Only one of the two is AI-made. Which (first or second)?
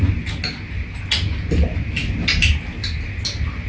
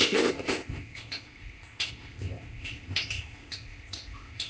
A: second